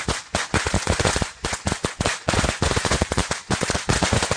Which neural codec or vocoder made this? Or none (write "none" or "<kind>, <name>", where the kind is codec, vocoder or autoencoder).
vocoder, Vocos